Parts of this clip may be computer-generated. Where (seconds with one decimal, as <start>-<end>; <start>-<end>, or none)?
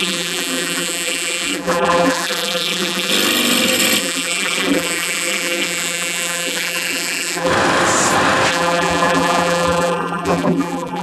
0.0-3.1; 4.0-7.5; 8.5-11.0